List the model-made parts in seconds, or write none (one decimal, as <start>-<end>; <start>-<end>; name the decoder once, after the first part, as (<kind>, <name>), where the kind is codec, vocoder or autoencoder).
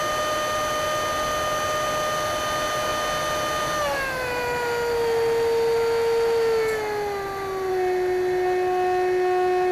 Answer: none